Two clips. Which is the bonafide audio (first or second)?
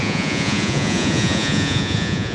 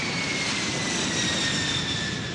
second